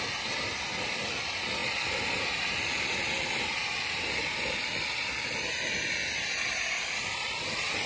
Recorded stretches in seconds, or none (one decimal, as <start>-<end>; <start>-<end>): 0.0-7.9